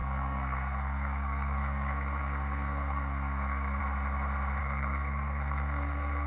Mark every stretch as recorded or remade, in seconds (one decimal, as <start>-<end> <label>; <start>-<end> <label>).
0.0-3.8 remade; 3.8-4.6 recorded; 4.6-6.3 remade